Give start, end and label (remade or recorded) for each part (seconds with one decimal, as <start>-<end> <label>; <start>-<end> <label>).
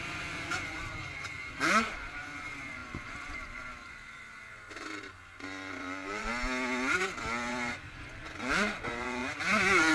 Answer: 0.0-6.3 remade; 6.3-7.5 recorded; 7.5-9.9 remade